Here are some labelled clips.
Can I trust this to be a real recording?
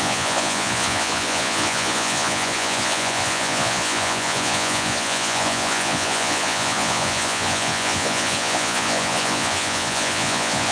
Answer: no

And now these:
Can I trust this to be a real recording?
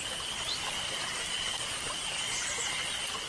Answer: yes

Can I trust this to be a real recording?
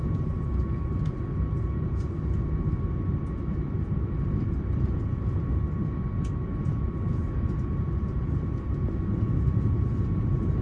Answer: yes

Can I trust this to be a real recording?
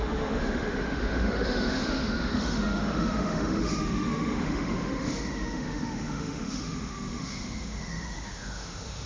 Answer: no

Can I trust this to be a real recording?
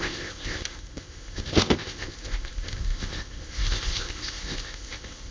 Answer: no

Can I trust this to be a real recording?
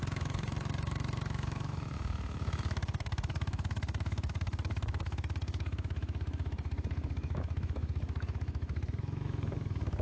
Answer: no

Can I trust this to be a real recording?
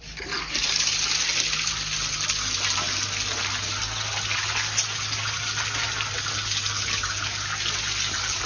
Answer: yes